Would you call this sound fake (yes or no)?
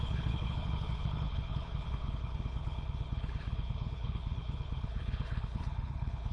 yes